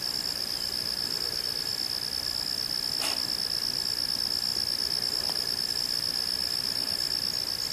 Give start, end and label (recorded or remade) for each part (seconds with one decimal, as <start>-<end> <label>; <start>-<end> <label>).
0.0-7.7 recorded